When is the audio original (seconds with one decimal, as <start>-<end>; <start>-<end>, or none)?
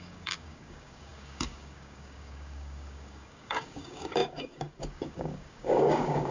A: none